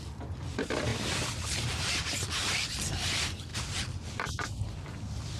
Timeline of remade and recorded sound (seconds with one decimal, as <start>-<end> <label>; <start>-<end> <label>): 0.0-2.4 recorded; 2.4-3.1 remade; 3.1-5.4 recorded